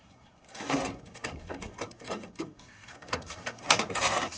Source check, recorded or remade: remade